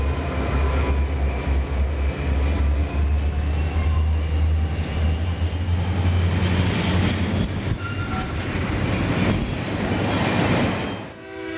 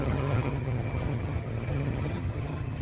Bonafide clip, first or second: first